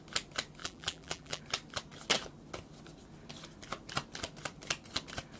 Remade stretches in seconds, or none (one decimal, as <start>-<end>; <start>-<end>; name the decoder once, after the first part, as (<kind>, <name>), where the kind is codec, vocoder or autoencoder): 0.6-1.4 (vocoder, BigVGAN v2)